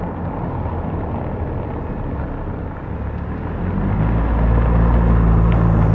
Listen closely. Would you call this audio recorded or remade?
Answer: recorded